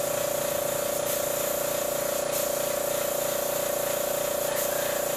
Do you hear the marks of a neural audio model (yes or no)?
no